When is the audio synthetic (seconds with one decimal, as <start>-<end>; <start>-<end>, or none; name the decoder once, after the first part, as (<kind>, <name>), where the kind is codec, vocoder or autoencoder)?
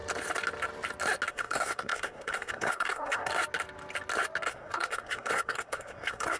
1.3-3.3 (codec, SNAC); 4.5-6.4